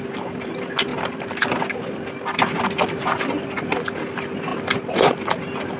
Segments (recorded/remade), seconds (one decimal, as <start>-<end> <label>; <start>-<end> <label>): 0.0-5.8 recorded